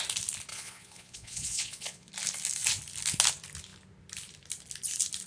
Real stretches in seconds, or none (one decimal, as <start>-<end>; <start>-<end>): 0.0-0.5; 2.1-5.3